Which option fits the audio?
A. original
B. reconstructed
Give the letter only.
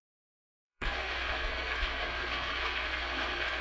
B